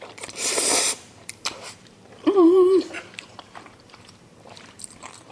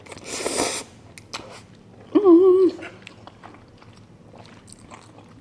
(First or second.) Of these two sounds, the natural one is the second